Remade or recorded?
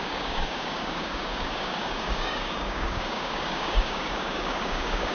remade